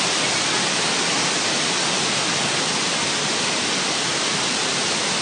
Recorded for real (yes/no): yes